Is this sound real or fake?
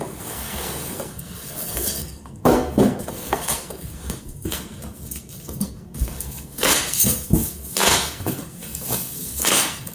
fake